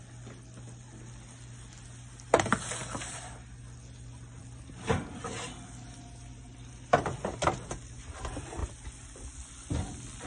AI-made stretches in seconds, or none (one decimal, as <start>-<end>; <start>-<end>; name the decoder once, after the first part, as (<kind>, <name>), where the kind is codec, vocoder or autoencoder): none